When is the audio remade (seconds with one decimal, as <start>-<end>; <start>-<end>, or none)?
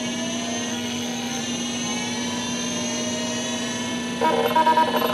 0.7-1.4